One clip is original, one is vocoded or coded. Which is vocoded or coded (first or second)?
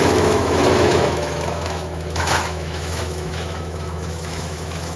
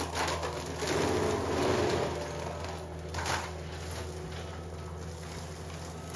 first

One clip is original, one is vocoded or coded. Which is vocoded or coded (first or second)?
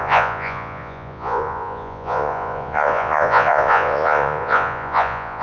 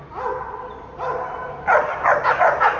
first